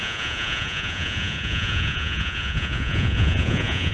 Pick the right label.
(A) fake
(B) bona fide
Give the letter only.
A